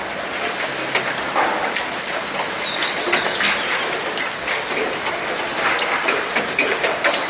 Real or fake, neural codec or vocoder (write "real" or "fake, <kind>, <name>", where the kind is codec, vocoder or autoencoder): real